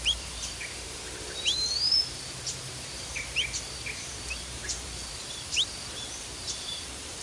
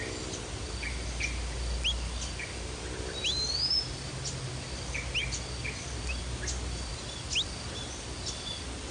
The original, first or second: second